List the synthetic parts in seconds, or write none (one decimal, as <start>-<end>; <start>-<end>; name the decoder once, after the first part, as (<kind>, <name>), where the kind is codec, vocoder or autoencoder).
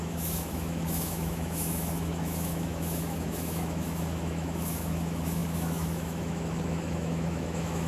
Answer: 0.0-7.9 (autoencoder, DAC-VAE)